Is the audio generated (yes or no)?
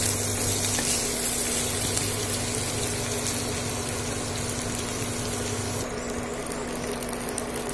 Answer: no